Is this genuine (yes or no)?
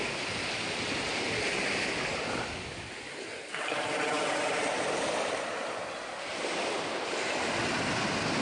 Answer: yes